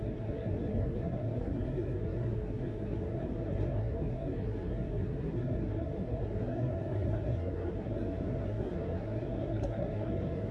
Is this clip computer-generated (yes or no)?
yes